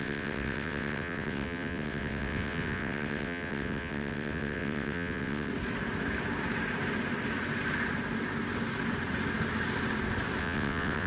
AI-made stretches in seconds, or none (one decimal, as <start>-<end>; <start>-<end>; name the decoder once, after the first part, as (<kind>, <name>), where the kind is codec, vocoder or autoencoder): 0.0-5.5 (vocoder, WaveNeXt); 10.4-11.1